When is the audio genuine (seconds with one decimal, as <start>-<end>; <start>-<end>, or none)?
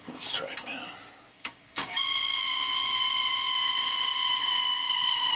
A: 0.7-1.3